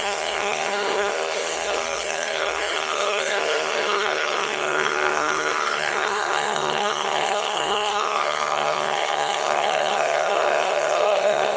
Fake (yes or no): yes